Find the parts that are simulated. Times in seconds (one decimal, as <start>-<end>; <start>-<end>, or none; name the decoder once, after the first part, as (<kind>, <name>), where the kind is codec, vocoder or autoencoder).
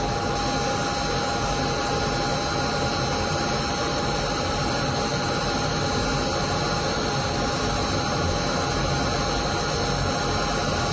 none